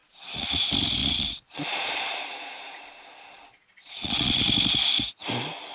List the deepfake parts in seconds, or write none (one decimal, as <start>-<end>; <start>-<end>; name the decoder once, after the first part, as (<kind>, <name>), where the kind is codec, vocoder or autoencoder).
0.0-0.5 (vocoder, Vocos); 1.0-4.4